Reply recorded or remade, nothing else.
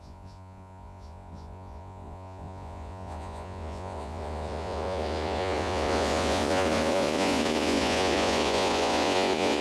remade